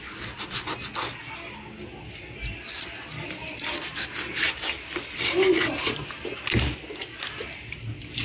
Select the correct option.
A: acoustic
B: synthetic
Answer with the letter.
A